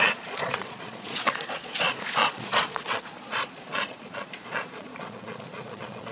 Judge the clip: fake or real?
fake